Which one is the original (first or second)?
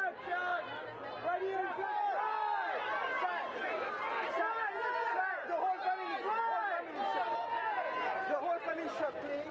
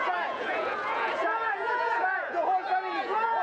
first